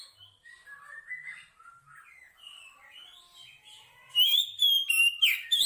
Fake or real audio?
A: real